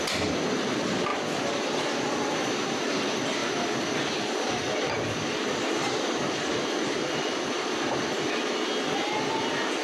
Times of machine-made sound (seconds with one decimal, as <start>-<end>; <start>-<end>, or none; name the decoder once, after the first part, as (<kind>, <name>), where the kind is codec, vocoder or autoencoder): none

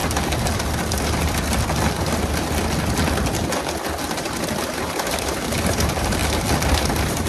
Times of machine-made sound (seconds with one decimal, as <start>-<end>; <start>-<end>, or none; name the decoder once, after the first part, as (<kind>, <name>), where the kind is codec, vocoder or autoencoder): 4.0-6.2 (vocoder, BigVGAN v2); 6.7-7.3

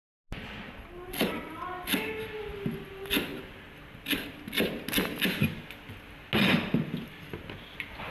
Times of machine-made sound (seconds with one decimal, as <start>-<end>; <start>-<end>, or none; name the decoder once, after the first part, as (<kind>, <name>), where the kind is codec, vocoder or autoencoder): none

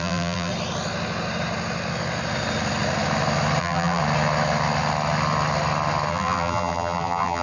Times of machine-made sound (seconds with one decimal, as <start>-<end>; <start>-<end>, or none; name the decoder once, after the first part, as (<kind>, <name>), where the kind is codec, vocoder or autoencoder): 0.0-0.5 (vocoder, BigVGAN v2); 3.6-4.0; 6.1-7.4

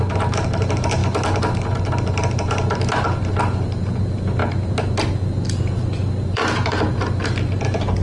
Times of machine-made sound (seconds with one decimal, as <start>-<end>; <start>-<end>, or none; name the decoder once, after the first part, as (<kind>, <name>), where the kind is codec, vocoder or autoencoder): 0.0-1.0 (vocoder, BigVGAN v2); 3.4-4.4; 5.0-8.0